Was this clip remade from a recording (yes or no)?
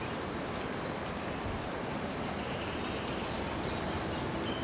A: no